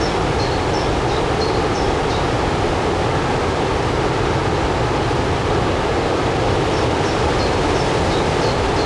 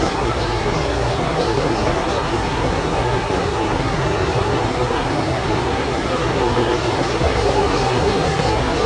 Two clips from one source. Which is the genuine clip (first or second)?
first